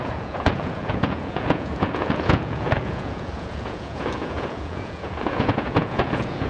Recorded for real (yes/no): no